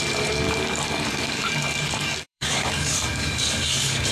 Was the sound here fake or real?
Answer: fake